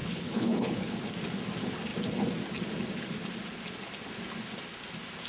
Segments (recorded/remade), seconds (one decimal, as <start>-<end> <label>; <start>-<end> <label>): 0.0-1.0 remade; 1.0-5.3 recorded